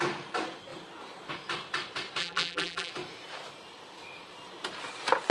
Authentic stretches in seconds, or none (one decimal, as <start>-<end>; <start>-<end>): 0.0-2.2; 2.9-5.3